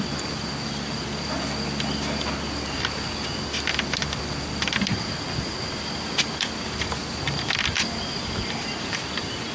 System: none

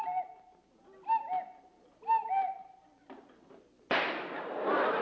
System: none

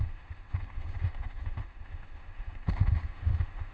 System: autoencoder, DAC-VAE